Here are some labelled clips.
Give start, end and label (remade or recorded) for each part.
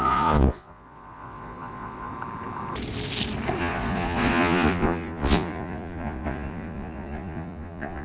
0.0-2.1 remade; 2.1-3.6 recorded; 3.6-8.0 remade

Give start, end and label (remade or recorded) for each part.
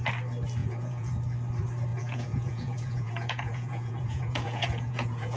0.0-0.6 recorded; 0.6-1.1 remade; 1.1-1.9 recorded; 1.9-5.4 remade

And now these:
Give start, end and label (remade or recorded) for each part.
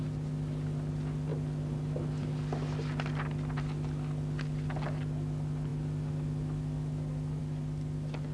0.0-8.3 recorded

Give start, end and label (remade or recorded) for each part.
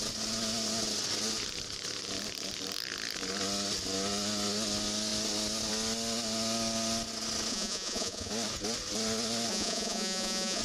0.0-7.5 recorded; 7.5-8.3 remade; 8.3-9.5 recorded; 9.5-10.6 remade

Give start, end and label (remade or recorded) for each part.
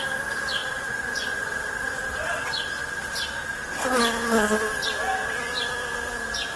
0.0-0.6 recorded; 0.6-1.5 remade; 1.5-6.6 recorded